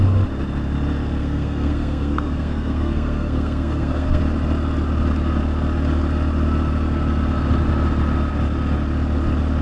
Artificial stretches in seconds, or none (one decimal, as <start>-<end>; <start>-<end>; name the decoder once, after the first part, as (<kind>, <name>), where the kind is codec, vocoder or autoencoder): 1.2-4.2 (codec, SNAC)